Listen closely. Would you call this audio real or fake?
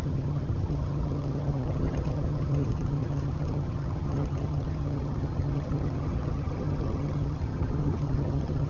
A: fake